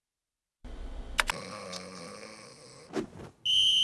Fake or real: real